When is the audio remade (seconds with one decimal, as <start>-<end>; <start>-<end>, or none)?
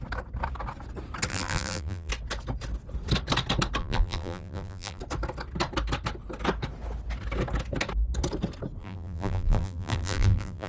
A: 1.3-2.1; 3.8-5.0; 8.8-10.7